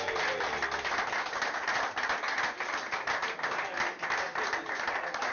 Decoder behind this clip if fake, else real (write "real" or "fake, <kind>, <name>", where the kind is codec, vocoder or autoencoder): real